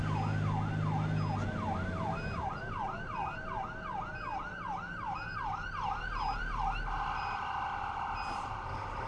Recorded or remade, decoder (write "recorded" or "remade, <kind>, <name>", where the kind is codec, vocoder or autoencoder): recorded